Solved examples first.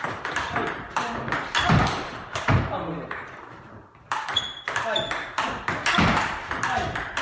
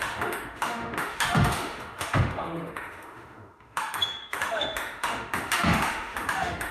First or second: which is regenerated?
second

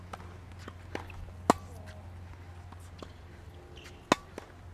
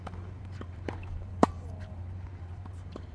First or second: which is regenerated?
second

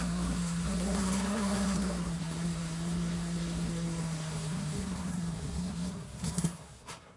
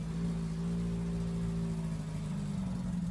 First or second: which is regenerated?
first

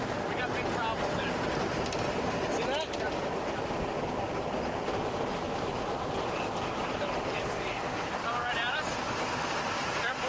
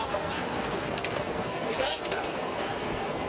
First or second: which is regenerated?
second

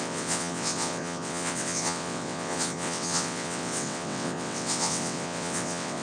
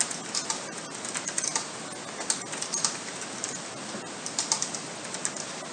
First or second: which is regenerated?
first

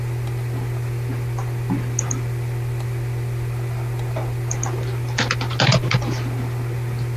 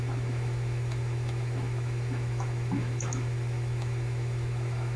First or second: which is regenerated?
second